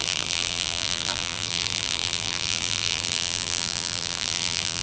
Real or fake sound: fake